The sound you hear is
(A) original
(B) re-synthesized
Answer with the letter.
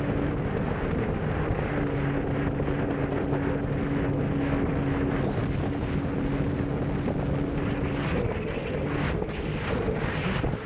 A